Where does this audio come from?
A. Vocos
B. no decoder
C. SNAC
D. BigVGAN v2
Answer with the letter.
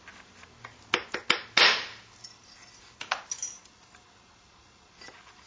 B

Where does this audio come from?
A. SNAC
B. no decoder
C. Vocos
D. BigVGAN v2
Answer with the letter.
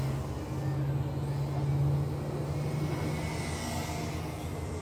B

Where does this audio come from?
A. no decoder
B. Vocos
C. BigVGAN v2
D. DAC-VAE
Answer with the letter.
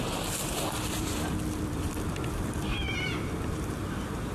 C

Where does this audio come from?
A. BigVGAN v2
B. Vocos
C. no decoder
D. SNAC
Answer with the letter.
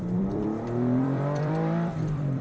A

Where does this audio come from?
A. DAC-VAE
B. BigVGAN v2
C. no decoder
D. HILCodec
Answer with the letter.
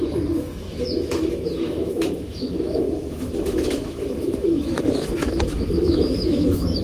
A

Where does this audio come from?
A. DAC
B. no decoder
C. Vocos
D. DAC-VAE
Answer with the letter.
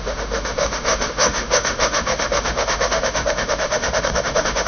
D